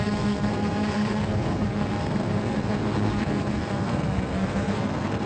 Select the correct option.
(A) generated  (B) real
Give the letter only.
A